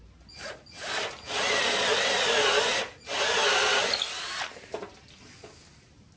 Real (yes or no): yes